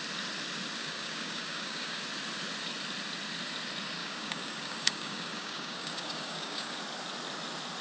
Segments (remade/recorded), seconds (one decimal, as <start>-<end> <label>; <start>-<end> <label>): 0.0-0.8 recorded; 0.8-2.0 remade; 2.0-4.0 recorded; 4.0-6.8 remade; 6.8-7.8 recorded